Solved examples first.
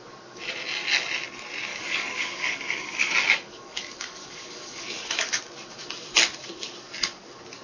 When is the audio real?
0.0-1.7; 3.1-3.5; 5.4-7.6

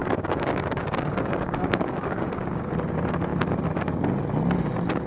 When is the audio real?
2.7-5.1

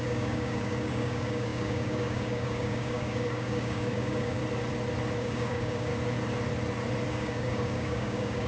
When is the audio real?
4.4-5.2; 5.9-7.1

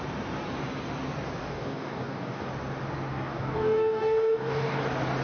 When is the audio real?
0.0-1.4; 2.5-3.1; 4.8-5.2